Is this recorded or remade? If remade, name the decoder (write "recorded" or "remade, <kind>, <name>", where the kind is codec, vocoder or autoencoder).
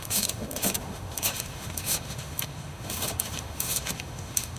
remade, autoencoder, DAC-VAE